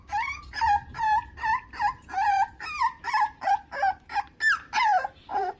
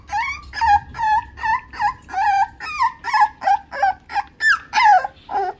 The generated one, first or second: first